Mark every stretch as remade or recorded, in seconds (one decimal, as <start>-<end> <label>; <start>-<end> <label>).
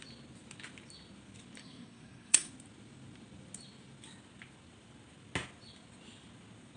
0.0-1.6 recorded; 1.6-2.5 remade; 2.5-6.8 recorded